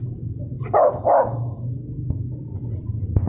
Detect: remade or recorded recorded